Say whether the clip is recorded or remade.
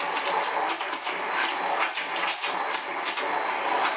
recorded